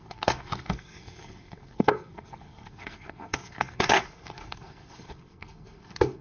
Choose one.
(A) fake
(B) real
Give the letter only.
A